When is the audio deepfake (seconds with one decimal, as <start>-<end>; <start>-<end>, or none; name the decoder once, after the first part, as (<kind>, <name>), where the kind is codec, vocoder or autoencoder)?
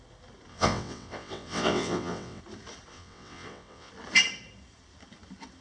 0.5-2.4 (vocoder, WaveNeXt); 2.9-3.9